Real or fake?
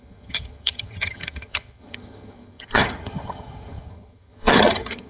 fake